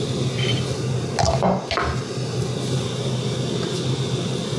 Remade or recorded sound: recorded